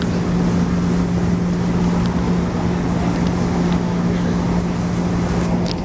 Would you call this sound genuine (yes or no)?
yes